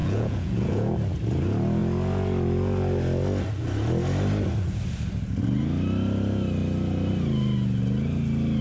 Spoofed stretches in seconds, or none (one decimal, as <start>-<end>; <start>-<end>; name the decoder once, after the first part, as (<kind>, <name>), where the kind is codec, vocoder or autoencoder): 0.0-0.9 (vocoder, Vocos)